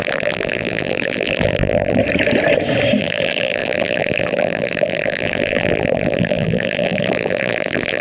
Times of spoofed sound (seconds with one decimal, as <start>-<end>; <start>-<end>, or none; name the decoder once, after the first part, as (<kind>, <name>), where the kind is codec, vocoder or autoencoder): 0.0-2.0 (vocoder, BigVGAN v2); 3.0-8.0